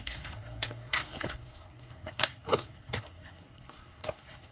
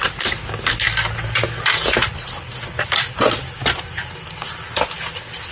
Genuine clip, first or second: second